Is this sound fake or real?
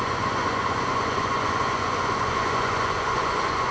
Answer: fake